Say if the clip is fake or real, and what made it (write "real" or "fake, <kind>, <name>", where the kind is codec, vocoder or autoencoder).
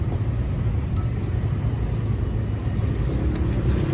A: real